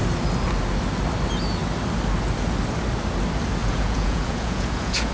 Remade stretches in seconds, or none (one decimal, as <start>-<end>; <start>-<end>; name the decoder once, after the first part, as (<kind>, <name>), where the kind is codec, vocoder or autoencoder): 3.6-5.1 (vocoder, Vocos)